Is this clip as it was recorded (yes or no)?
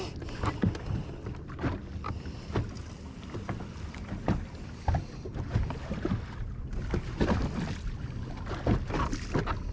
yes